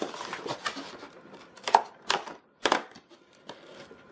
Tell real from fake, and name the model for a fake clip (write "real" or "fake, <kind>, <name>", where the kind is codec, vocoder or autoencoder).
real